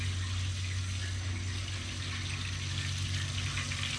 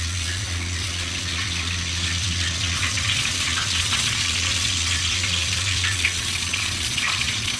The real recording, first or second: first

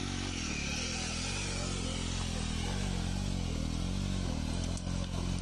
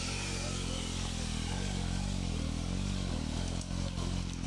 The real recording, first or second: first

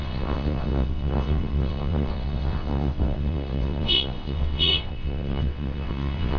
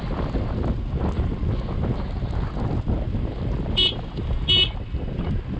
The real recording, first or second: second